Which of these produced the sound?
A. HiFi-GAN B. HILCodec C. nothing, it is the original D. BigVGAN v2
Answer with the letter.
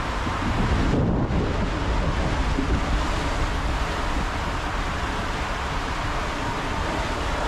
C